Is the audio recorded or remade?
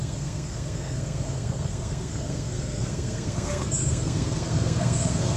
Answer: remade